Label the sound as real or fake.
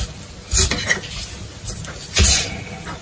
real